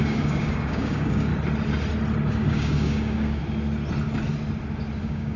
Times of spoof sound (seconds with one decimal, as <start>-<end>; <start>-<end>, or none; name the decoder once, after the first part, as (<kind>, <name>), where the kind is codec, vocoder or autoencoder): 0.0-1.3 (codec, DAC); 2.3-3.4; 5.0-5.4